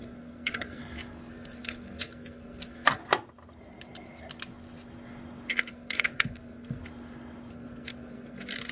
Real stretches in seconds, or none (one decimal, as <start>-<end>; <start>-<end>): 0.8-1.3; 3.0-5.5; 6.8-7.5

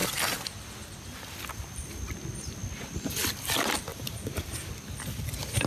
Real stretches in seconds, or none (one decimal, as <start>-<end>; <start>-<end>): 0.0-3.9; 4.7-5.7

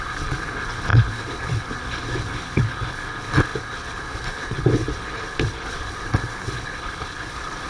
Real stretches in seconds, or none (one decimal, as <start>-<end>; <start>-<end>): none